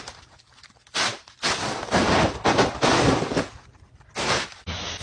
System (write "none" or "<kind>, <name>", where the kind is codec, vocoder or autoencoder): none